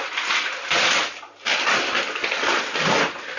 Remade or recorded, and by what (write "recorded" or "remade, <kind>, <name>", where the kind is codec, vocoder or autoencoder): recorded